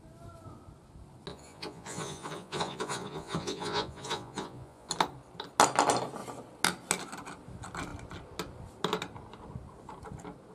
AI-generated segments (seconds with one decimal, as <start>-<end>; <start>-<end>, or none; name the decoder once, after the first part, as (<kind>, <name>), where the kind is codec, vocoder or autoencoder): 1.3-4.9 (vocoder, Vocos)